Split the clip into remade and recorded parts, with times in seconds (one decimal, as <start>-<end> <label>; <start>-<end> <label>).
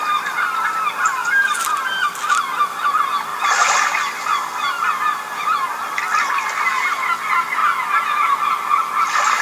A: 0.0-1.2 recorded; 1.2-2.7 remade; 2.7-3.3 recorded; 3.3-4.5 remade; 4.5-9.4 recorded